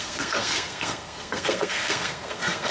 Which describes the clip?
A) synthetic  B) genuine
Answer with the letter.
A